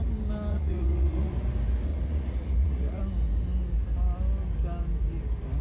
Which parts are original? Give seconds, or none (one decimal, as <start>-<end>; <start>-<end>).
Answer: 0.0-0.5; 1.3-1.9; 3.0-5.6